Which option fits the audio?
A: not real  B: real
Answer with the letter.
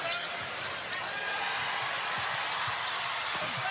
B